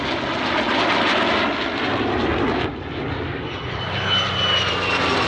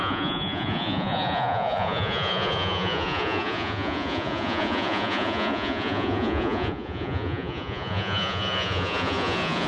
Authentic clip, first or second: first